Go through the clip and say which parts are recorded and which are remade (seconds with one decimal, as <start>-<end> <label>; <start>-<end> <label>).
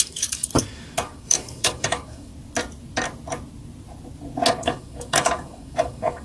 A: 0.0-2.3 remade; 2.3-4.5 recorded; 4.5-6.2 remade